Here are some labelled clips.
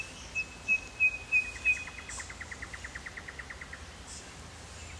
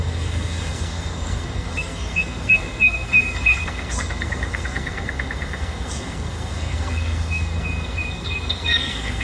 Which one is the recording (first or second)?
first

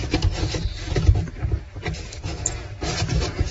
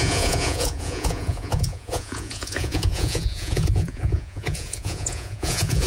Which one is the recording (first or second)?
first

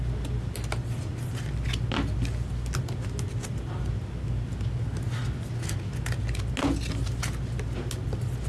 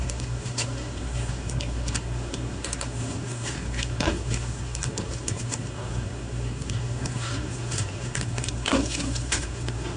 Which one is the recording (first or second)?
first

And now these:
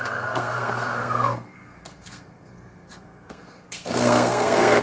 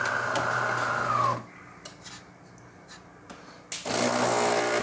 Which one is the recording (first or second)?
second